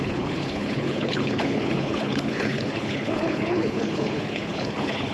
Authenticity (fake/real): fake